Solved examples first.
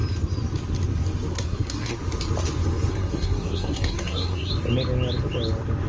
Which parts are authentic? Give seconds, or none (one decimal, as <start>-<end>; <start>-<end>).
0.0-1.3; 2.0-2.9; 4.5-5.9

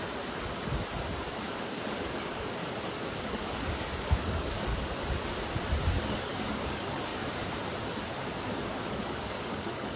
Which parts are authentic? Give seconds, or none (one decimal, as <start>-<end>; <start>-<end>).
0.0-1.3; 2.6-3.2; 4.7-5.9; 7.1-8.7

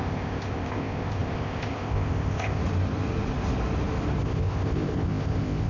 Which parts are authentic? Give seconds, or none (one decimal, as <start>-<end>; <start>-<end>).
2.6-4.2